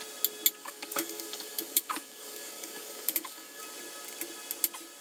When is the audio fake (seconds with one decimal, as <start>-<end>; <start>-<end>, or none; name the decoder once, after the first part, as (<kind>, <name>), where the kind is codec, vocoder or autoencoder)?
0.6-3.6 (codec, DAC)